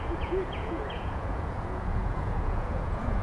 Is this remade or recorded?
remade